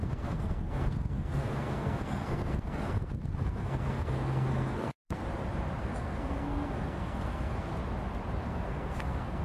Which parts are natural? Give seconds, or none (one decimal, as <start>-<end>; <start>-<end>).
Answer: 5.2-5.8; 7.8-8.4

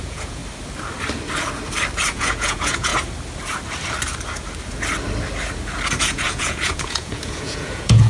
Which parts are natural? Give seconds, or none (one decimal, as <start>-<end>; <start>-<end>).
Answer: 0.4-2.1; 2.9-6.0

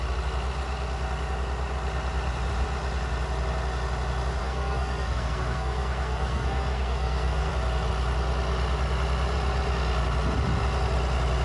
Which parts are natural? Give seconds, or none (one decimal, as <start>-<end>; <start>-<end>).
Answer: 0.0-4.4; 7.5-11.4

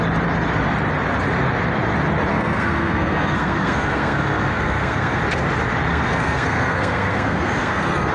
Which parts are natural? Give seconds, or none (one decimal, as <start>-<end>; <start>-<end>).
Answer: 0.0-2.3; 5.2-5.9